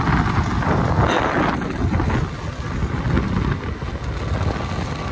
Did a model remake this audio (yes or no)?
no